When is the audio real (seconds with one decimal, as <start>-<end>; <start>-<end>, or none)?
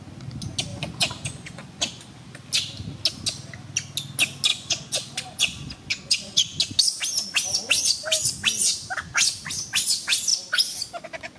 0.0-0.7; 2.0-4.5; 6.6-11.4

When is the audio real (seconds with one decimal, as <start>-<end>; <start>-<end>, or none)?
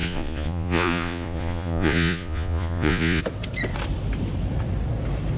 3.2-5.4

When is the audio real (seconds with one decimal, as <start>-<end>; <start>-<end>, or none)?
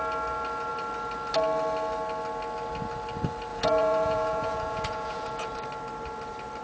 0.0-3.5; 5.5-6.6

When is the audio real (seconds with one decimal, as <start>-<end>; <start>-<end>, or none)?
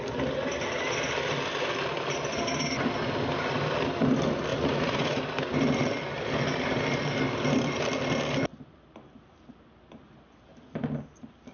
0.0-4.5; 5.2-11.5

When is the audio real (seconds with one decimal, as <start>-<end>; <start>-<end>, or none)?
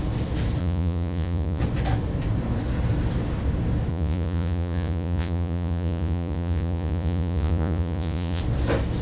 0.0-0.6; 1.6-3.9; 8.4-9.0